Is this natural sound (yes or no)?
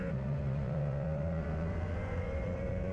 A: no